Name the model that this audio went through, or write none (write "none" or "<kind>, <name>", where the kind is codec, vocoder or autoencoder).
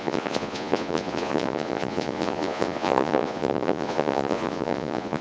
vocoder, Vocos